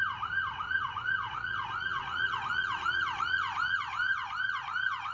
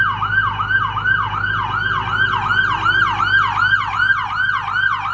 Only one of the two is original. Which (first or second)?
second